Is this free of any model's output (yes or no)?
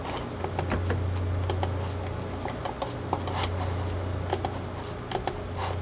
yes